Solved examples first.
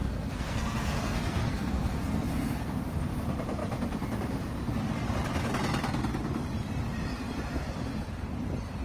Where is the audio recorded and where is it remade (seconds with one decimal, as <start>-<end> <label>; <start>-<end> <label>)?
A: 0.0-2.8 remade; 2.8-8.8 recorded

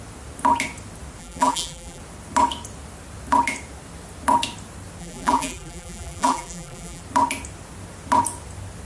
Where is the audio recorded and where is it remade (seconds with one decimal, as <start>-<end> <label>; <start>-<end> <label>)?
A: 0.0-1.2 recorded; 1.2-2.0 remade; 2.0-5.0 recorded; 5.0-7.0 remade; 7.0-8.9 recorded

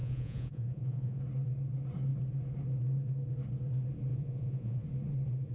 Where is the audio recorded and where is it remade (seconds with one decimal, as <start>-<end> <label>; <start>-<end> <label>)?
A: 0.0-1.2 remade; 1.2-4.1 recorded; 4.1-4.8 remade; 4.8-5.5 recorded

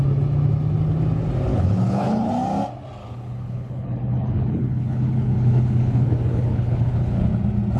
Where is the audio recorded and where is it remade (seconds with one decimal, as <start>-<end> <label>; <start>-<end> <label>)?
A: 0.0-1.5 recorded; 1.5-2.3 remade; 2.3-3.0 recorded; 3.0-7.3 remade; 7.3-7.8 recorded